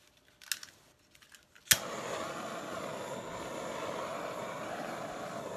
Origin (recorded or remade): recorded